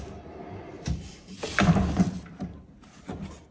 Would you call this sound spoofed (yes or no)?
no